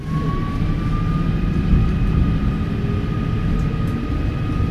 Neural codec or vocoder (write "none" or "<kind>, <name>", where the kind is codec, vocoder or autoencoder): none